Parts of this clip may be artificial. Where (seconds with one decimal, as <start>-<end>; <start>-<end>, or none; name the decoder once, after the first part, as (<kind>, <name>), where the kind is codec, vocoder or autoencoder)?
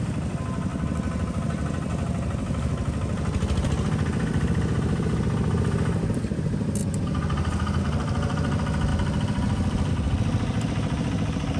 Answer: 0.0-0.7 (vocoder, BigVGAN v2); 1.3-1.9; 2.7-6.8; 7.8-11.6